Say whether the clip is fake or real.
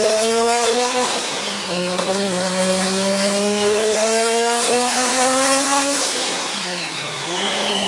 fake